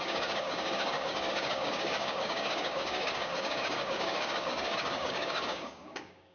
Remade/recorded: remade